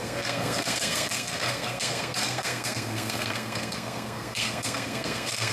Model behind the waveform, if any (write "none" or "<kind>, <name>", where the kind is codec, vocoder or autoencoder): codec, SNAC